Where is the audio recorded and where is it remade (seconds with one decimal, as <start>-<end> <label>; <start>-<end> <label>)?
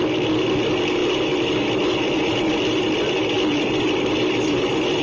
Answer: 0.0-5.0 recorded